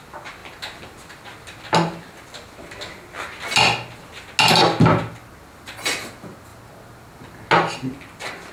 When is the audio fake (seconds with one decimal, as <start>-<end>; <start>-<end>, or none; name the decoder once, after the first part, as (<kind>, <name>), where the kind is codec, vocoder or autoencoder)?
none